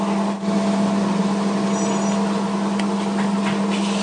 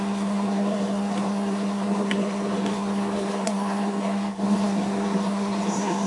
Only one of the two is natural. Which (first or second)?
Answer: first